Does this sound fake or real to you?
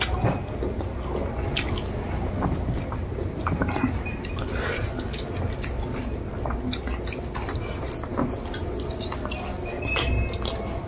real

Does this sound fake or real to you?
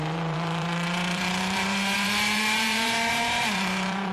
fake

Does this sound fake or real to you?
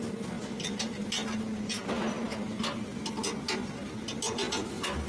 real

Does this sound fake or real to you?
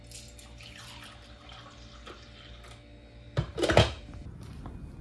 real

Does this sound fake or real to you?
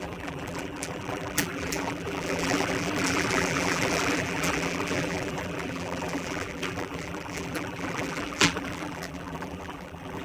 fake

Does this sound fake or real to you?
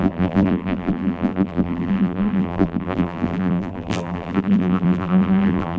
fake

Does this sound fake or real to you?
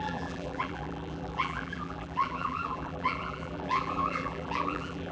fake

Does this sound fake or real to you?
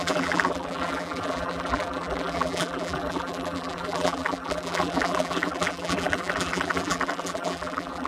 fake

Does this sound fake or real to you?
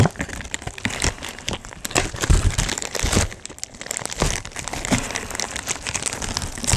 real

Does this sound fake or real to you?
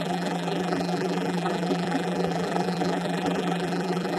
fake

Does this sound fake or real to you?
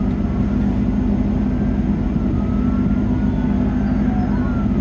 real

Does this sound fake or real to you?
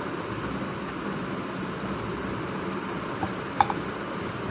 real